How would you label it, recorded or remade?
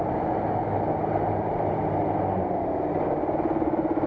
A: recorded